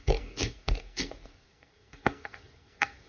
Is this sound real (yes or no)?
no